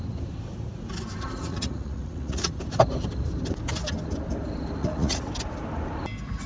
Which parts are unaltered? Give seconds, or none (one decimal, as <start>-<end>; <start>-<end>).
0.0-1.5; 2.5-4.8; 5.3-6.5